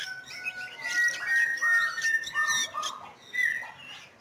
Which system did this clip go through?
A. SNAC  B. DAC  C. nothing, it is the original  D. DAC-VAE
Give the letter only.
C